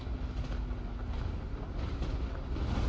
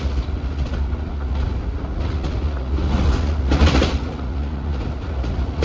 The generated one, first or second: second